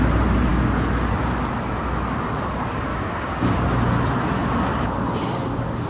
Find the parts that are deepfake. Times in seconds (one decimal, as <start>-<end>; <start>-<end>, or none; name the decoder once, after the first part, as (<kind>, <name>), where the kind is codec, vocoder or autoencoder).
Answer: 2.9-3.5 (codec, DAC)